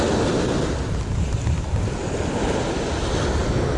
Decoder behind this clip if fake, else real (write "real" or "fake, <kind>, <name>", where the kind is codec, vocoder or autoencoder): real